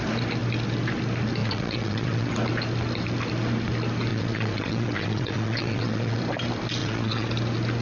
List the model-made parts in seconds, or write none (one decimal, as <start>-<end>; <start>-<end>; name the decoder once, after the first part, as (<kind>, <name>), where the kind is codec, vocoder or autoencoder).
1.4-2.3 (vocoder, WaveNeXt); 4.1-6.2; 6.8-7.3